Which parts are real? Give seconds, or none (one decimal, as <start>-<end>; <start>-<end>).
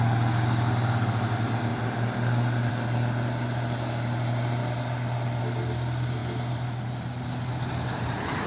0.0-8.5